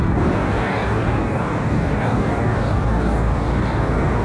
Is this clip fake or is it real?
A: fake